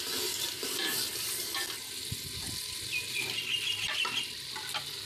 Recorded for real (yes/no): yes